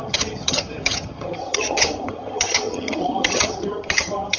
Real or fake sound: fake